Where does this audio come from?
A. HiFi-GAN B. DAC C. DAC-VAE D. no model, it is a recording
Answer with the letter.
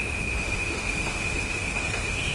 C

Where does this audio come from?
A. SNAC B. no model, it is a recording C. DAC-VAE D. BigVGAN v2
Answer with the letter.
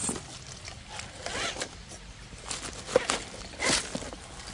B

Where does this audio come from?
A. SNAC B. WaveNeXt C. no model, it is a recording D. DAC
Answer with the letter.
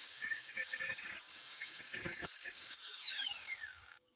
D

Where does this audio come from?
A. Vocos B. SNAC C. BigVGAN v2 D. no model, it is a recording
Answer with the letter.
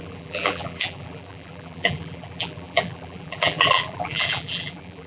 C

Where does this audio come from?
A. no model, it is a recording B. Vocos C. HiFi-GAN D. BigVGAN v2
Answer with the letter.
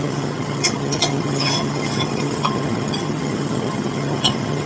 C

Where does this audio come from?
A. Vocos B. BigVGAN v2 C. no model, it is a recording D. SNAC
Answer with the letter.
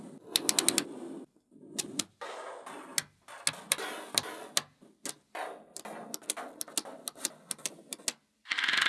C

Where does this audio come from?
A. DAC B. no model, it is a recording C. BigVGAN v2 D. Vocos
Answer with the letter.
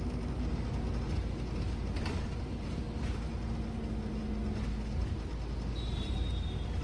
B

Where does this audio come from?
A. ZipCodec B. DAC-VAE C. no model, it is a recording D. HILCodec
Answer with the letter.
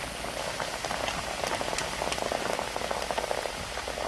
C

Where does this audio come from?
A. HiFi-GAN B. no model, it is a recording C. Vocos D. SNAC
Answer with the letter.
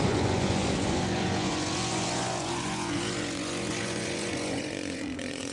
C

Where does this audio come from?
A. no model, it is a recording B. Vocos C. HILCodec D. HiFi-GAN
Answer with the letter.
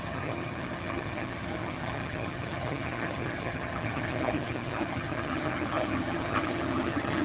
D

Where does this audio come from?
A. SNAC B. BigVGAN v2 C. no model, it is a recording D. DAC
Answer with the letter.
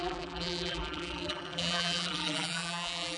B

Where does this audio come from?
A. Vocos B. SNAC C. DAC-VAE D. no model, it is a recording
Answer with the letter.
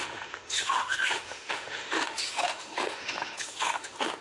C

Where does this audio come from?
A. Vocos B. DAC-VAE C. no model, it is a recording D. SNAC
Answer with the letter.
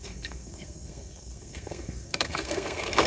D